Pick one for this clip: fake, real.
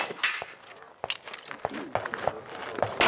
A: real